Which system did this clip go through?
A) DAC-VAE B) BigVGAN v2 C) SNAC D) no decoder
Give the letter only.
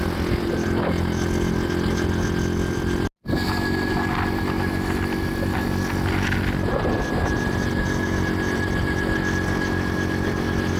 D